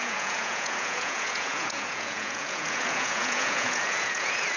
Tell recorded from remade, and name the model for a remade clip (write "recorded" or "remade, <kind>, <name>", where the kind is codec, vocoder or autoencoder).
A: remade, vocoder, Vocos